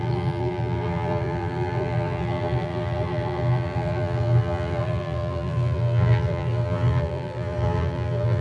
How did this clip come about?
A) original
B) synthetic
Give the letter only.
B